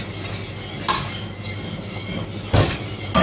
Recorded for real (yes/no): yes